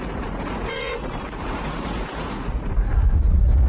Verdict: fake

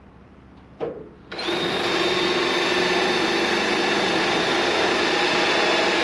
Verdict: fake